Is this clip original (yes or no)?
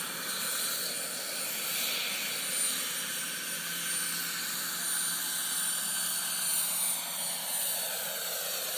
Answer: yes